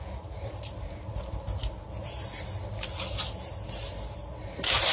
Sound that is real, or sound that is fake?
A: real